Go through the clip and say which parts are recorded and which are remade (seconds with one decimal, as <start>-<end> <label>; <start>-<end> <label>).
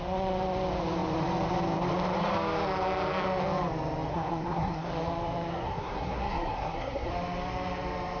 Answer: 0.0-4.1 recorded; 4.1-4.9 remade; 4.9-5.5 recorded; 5.5-7.1 remade; 7.1-8.2 recorded